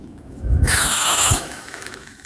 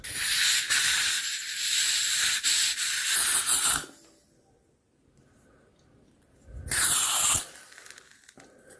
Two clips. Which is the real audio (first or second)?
second